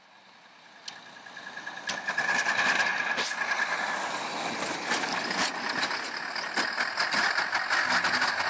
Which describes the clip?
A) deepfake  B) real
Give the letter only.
B